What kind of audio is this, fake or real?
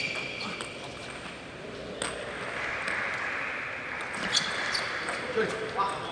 real